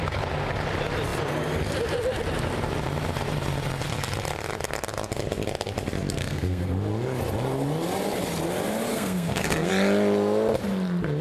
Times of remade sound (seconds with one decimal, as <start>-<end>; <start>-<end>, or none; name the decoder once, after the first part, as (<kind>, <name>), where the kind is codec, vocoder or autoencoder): 6.2-6.7 (codec, SNAC); 8.9-9.7